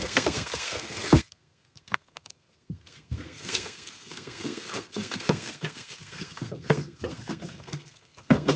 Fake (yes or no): yes